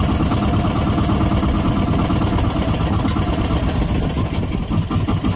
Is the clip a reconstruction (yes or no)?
no